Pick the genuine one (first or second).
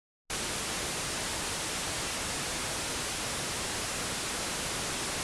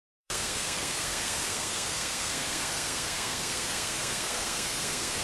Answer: first